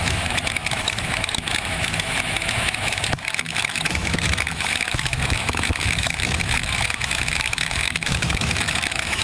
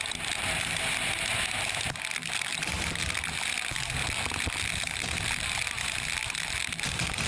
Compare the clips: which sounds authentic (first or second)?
second